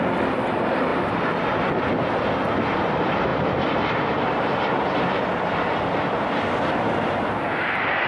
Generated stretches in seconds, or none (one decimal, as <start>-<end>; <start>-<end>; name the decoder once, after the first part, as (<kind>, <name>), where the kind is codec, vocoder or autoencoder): 0.9-1.7 (vocoder, BigVGAN v2); 3.3-8.1